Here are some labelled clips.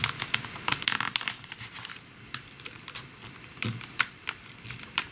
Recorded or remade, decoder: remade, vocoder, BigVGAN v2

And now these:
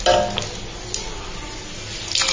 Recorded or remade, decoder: recorded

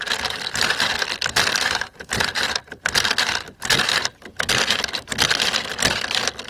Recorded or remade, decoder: remade, vocoder, BigVGAN v2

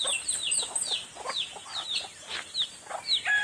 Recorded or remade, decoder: recorded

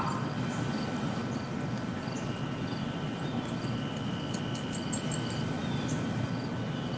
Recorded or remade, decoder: recorded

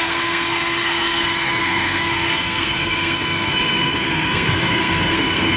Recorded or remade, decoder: remade, codec, SNAC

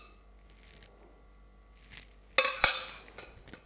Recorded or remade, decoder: recorded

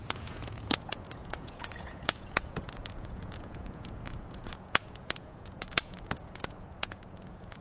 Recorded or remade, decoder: remade, vocoder, Vocos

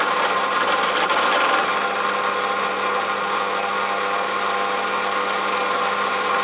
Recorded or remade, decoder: recorded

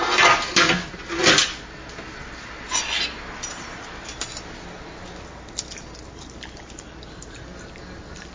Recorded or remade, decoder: recorded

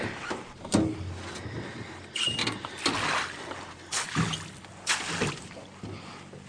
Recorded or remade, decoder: recorded